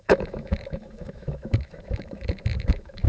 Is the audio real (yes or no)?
no